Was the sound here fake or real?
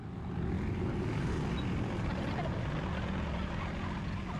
real